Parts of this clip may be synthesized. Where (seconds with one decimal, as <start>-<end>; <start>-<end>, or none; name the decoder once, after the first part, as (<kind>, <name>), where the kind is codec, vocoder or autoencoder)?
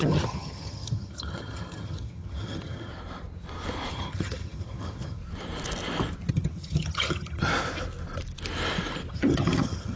0.0-2.9 (vocoder, HiFi-GAN); 3.9-5.2; 6.3-7.5; 9.1-10.0